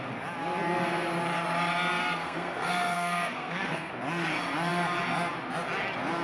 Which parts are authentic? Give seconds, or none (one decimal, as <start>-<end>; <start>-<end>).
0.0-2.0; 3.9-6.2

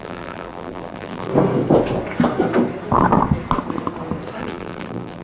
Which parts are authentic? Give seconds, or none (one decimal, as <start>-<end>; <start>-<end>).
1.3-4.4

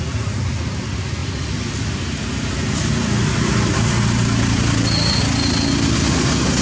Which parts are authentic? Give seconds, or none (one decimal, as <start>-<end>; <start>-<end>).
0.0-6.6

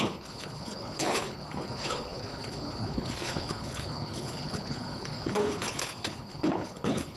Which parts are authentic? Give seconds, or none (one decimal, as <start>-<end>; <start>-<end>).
none

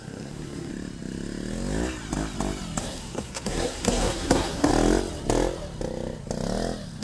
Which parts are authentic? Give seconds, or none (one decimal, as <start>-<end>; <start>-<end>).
0.7-2.8; 4.7-7.0